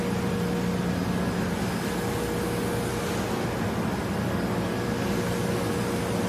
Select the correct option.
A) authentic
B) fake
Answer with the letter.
A